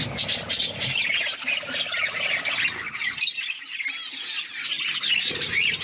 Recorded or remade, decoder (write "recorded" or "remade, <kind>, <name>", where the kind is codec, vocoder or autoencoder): recorded